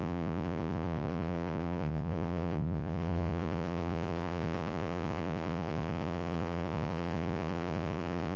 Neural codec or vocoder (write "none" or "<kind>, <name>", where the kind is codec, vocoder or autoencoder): vocoder, Vocos